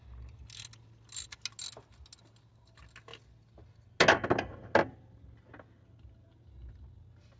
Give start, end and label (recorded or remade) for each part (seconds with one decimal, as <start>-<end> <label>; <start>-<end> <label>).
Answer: 0.0-7.4 recorded